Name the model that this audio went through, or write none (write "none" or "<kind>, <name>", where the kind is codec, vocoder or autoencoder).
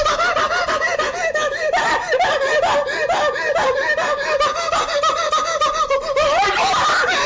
none